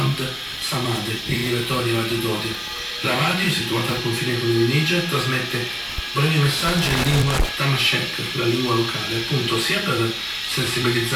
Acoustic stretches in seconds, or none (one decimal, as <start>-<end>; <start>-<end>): 1.4-2.9; 4.3-7.2